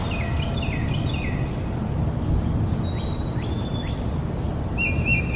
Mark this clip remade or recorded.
recorded